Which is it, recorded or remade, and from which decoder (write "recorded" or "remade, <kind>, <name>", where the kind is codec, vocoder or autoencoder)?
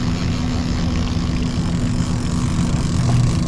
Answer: recorded